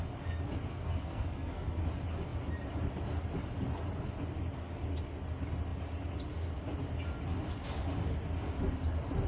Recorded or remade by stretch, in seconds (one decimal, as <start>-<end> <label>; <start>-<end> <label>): 0.0-0.7 recorded; 0.7-1.8 remade; 1.8-9.3 recorded